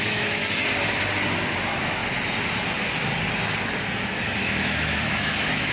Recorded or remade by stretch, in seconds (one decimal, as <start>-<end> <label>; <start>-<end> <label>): 0.0-0.4 remade; 0.4-1.6 recorded; 1.6-2.0 remade; 2.0-4.4 recorded; 4.4-5.7 remade